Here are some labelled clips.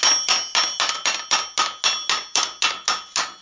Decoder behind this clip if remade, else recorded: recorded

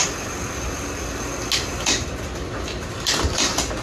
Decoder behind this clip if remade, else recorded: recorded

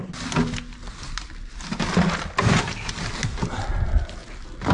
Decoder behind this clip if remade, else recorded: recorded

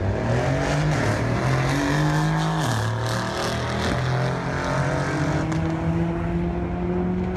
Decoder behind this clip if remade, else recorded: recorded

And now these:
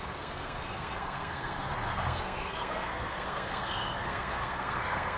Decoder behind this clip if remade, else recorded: remade, codec, SNAC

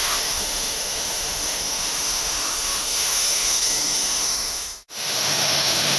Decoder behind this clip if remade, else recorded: remade, autoencoder, DAC-VAE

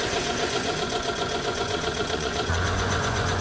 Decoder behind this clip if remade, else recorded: remade, vocoder, Vocos